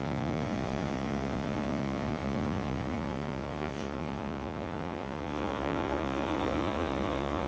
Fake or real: fake